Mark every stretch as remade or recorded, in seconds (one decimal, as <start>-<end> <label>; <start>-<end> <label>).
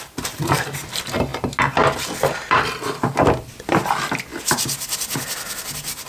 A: 0.0-6.1 recorded